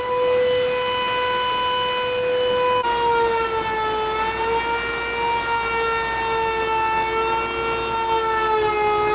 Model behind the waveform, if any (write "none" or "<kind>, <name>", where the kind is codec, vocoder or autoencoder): none